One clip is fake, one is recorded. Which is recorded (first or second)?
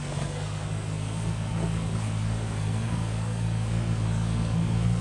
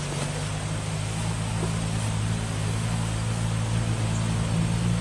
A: second